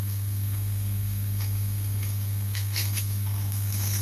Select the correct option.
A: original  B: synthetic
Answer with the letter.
B